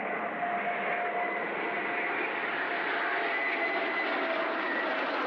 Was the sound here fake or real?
real